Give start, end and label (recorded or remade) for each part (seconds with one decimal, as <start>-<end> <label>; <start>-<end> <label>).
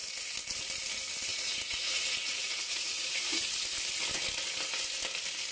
0.0-1.3 recorded; 1.3-3.5 remade; 3.5-5.5 recorded